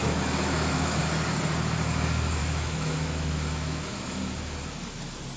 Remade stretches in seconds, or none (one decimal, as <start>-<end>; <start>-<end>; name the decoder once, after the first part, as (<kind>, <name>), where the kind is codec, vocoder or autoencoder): 0.0-1.0 (autoencoder, DAC-VAE); 2.4-4.2